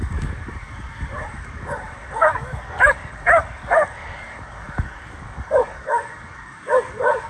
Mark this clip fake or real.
fake